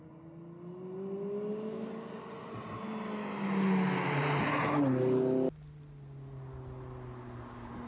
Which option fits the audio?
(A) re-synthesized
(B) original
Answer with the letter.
B